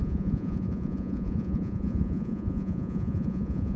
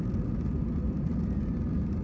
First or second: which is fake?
first